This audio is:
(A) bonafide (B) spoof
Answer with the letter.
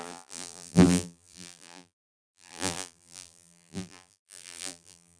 B